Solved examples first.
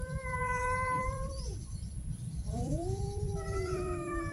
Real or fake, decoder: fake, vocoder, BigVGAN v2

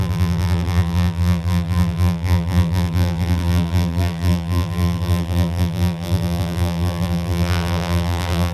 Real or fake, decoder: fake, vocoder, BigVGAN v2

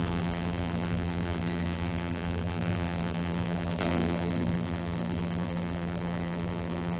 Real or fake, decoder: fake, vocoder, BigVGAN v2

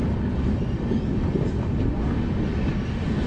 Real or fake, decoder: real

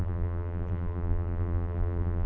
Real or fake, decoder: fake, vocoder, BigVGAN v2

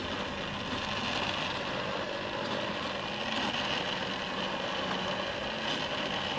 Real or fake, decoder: real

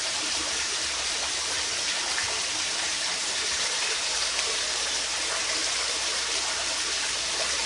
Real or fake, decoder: fake, vocoder, BigVGAN v2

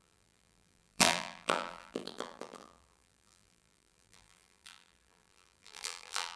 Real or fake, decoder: fake, vocoder, BigVGAN v2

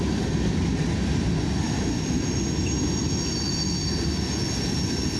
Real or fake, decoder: real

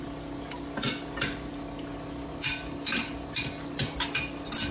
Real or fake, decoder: real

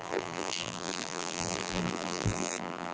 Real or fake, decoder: fake, vocoder, BigVGAN v2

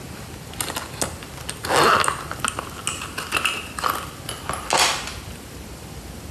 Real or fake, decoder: real